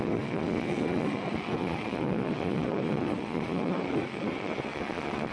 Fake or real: fake